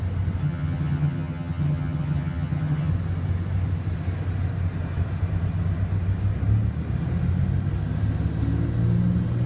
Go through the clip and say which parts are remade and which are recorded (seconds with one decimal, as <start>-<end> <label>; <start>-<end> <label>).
0.0-0.4 recorded; 0.4-2.9 remade; 2.9-9.5 recorded